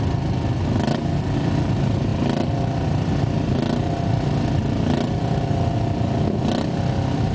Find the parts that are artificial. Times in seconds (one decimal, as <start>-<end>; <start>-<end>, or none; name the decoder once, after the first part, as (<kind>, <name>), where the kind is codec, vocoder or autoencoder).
none